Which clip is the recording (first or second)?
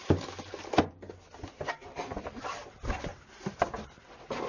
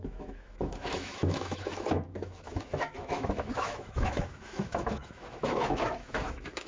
first